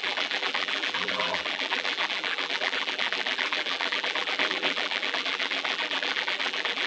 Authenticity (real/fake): fake